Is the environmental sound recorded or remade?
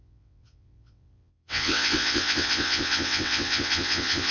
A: remade